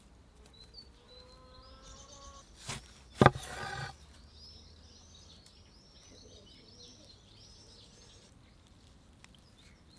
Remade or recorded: recorded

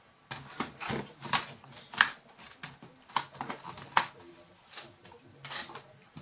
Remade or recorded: recorded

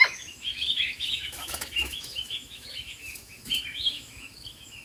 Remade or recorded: remade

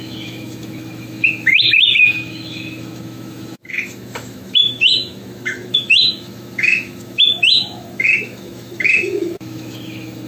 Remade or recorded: remade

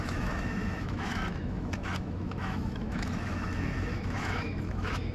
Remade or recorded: remade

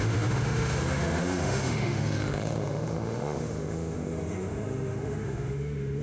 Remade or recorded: remade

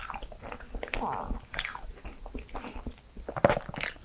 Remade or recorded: recorded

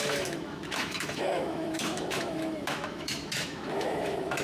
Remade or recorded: remade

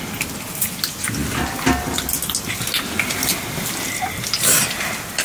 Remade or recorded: recorded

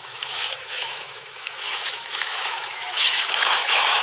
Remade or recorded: remade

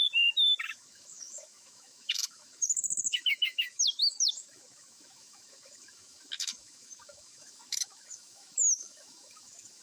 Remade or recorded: remade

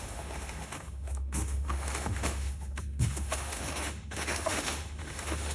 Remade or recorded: remade